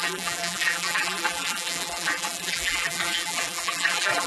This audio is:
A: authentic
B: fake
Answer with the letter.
B